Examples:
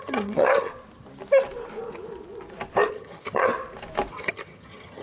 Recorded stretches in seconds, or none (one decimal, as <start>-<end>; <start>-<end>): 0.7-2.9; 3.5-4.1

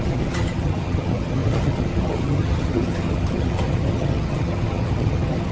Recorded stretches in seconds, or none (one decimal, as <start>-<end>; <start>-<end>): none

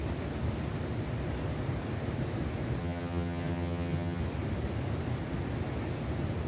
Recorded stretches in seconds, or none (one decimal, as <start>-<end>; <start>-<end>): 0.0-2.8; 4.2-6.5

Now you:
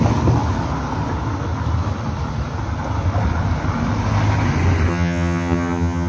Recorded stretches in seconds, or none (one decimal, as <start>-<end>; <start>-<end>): 0.0-4.9

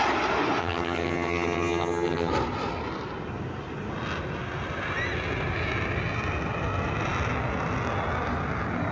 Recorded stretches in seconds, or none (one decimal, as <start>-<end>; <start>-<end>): 0.0-0.6; 2.3-8.9

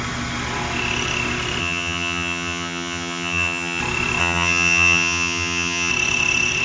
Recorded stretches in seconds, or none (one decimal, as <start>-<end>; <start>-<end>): 0.0-1.6; 3.8-4.2; 5.9-6.6

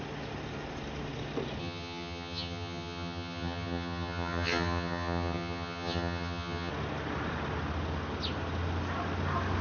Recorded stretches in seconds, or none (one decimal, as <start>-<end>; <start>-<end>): 0.0-1.6; 6.7-9.6